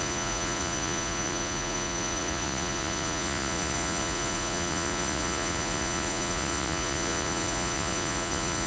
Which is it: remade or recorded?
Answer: remade